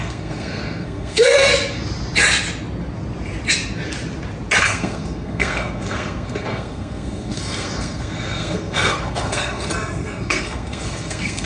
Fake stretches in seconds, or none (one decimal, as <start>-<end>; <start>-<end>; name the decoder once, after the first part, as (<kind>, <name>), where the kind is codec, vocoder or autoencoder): 0.0-1.5 (codec, SNAC); 4.6-11.5